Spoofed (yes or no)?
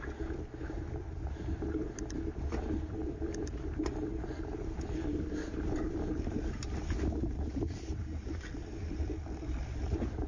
yes